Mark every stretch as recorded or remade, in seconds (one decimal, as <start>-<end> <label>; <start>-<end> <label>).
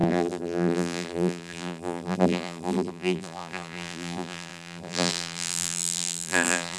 0.0-6.8 remade